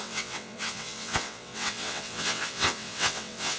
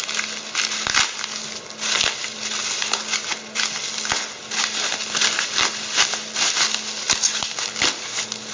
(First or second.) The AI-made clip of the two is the first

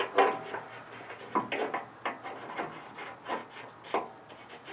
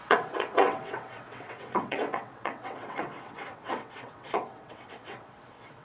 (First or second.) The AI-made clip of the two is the second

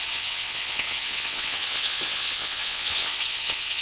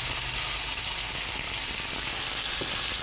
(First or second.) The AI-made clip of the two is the first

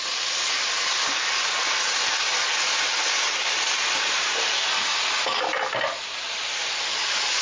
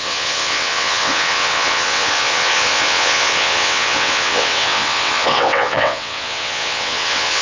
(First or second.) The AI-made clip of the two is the second